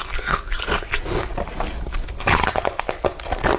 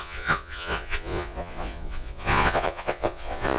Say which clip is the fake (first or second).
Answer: second